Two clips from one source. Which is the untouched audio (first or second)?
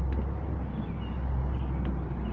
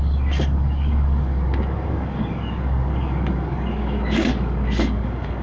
first